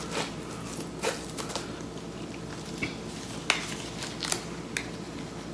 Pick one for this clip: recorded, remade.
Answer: recorded